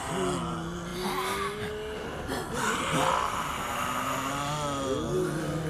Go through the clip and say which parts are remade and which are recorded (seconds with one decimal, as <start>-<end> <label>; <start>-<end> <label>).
0.0-5.7 recorded

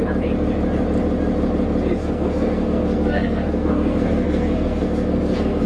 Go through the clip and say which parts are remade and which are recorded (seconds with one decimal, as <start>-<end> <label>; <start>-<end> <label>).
0.0-2.0 recorded; 2.0-5.7 remade

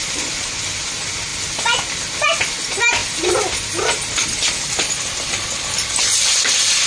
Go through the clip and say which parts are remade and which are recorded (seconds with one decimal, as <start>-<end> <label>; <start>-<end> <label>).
0.0-6.9 recorded

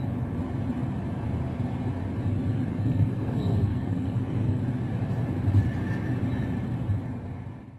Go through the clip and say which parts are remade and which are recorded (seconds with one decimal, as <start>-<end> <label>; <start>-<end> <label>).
0.0-2.7 recorded; 2.7-4.6 remade; 4.6-7.8 recorded

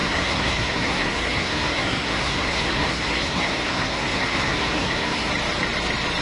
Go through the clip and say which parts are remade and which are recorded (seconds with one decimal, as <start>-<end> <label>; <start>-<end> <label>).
0.0-5.3 remade; 5.3-6.2 recorded

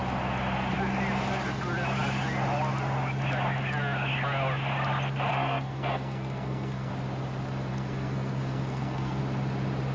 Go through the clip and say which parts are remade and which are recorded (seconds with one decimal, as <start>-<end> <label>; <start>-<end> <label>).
0.0-5.3 recorded; 5.3-6.9 remade; 6.9-7.7 recorded; 7.7-9.2 remade; 9.2-9.9 recorded

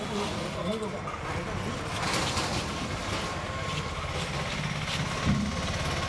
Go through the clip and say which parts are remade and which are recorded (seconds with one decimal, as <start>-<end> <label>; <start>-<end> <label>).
0.0-6.1 recorded

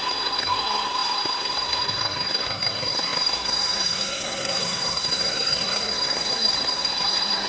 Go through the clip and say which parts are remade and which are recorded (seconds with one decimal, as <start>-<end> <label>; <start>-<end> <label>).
0.0-7.5 remade